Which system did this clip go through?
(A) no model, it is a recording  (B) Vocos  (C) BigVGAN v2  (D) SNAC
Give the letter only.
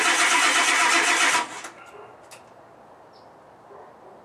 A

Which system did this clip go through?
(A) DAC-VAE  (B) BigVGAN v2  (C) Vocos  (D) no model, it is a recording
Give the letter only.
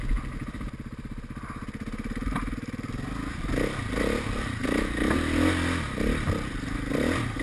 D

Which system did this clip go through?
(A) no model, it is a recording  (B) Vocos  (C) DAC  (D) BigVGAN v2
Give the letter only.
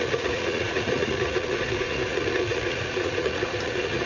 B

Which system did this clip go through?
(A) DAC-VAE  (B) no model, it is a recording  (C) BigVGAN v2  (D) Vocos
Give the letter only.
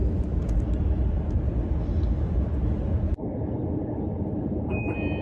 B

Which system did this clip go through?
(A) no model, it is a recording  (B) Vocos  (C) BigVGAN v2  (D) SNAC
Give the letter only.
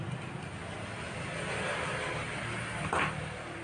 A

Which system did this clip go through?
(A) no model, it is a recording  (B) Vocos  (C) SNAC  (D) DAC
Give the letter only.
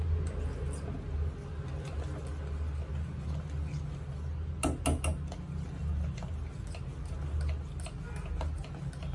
A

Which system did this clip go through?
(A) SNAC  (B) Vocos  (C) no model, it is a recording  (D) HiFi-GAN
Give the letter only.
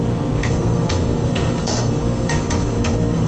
A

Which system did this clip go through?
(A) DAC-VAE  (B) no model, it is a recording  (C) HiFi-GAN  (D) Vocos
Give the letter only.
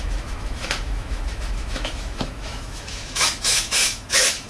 A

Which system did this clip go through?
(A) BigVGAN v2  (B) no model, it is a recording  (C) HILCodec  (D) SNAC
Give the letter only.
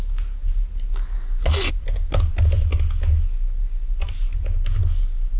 B